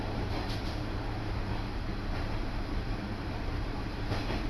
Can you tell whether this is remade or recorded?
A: remade